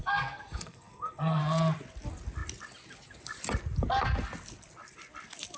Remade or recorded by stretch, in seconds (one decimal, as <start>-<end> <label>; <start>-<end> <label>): 0.0-1.4 remade; 1.4-5.6 recorded